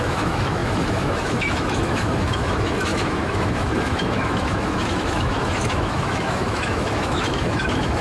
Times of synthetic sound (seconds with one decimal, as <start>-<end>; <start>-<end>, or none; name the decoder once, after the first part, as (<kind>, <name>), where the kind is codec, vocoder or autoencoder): 0.0-8.0 (autoencoder, DAC-VAE)